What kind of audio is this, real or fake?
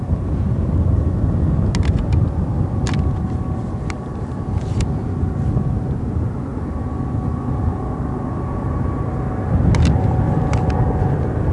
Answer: real